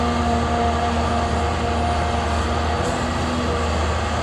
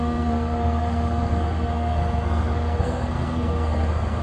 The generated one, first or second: second